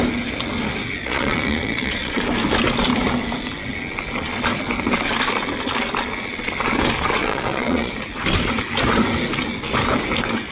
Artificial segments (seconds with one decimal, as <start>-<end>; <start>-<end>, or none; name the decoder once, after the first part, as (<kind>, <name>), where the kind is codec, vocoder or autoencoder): 1.0-2.2 (vocoder, Vocos); 7.2-7.9